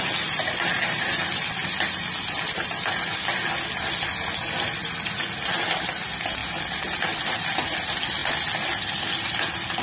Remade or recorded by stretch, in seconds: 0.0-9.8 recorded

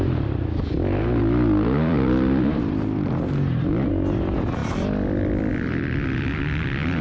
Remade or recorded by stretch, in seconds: 0.0-1.2 recorded; 1.2-3.9 remade; 3.9-4.6 recorded; 4.6-5.5 remade; 5.5-7.0 recorded

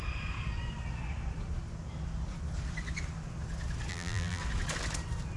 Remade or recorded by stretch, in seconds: 0.0-3.9 recorded; 3.9-4.4 remade; 4.4-5.4 recorded